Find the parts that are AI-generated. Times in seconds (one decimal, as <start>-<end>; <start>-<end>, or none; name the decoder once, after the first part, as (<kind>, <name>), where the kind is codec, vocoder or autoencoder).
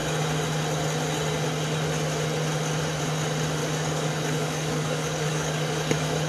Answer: 3.6-6.3 (codec, DAC)